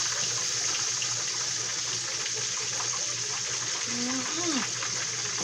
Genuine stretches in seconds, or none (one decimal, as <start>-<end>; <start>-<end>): 0.0-5.4